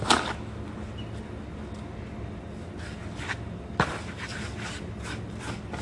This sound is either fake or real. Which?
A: fake